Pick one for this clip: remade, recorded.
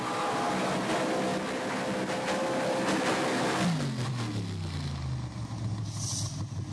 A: recorded